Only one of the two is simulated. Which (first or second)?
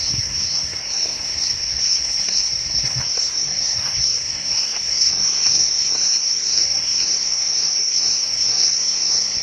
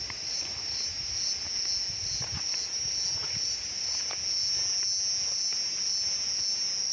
first